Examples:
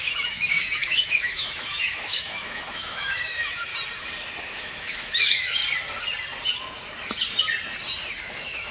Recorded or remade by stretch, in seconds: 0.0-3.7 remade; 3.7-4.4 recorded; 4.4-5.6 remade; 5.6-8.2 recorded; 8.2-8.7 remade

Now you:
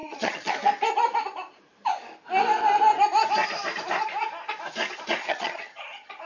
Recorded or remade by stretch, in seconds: 0.0-0.5 remade; 0.5-5.2 recorded; 5.2-6.3 remade

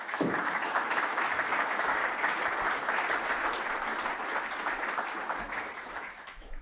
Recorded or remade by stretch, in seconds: 0.0-2.0 remade; 2.0-5.4 recorded; 5.4-6.6 remade

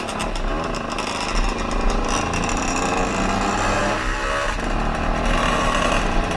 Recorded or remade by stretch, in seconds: 0.0-6.4 recorded

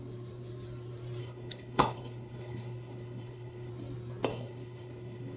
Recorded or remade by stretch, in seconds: 0.0-1.2 recorded; 1.2-3.7 remade; 3.7-4.3 recorded; 4.3-5.4 remade

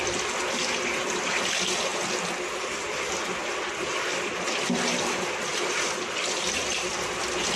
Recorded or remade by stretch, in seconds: 0.0-7.6 recorded